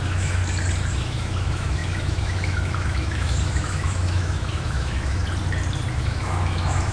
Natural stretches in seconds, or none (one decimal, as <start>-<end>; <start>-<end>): 0.4-0.9; 5.2-5.9

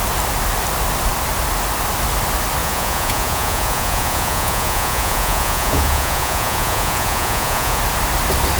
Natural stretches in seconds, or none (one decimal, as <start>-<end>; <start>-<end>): 0.0-2.6; 7.8-8.6

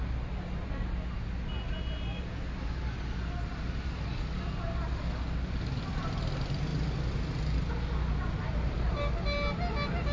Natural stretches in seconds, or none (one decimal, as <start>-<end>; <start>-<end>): 0.0-10.1

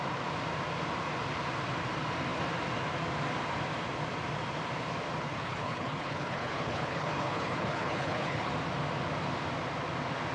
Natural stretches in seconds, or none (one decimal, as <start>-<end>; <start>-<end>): 0.0-5.2; 8.5-10.3